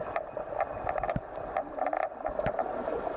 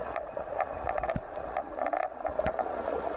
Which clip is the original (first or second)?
first